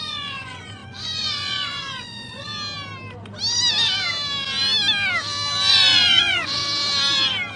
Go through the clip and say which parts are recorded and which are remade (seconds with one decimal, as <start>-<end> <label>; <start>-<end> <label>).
0.0-2.5 remade; 2.5-5.7 recorded; 5.7-6.6 remade; 6.6-7.6 recorded